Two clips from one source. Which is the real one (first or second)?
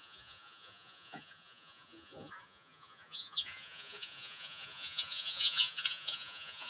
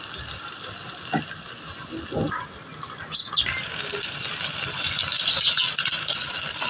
second